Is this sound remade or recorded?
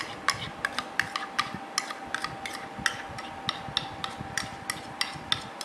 recorded